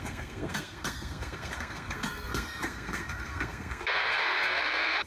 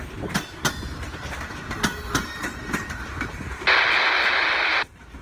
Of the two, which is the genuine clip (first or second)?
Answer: second